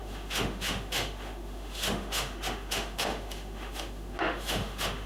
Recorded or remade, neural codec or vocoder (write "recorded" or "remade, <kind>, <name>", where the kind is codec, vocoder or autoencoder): remade, autoencoder, DAC-VAE